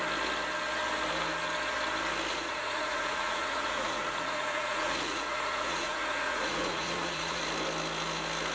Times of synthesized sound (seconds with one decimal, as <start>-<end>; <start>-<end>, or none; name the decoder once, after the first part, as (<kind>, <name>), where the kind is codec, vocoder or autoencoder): 2.3-7.4 (vocoder, Vocos)